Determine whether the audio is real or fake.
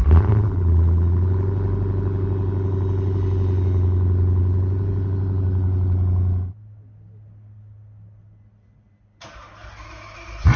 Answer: real